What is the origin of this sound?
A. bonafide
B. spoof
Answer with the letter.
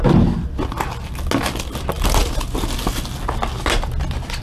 A